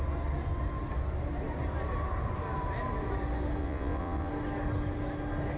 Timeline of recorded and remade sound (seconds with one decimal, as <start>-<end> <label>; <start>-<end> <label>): 0.0-3.6 recorded; 3.6-4.3 remade; 4.3-5.6 recorded